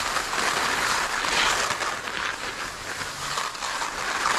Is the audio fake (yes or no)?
no